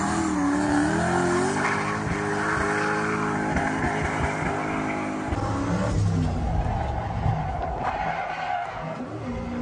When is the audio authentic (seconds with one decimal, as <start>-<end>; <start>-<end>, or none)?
0.0-8.5; 9.0-9.6